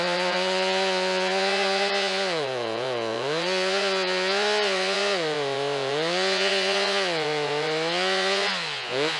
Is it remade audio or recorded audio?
remade